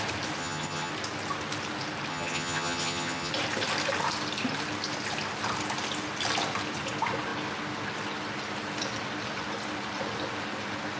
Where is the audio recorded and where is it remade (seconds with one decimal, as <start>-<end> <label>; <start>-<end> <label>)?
0.0-0.4 recorded; 0.4-0.9 remade; 0.9-2.1 recorded; 2.1-3.3 remade; 3.3-11.0 recorded